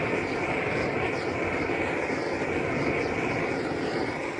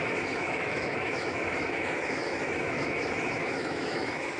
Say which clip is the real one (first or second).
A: first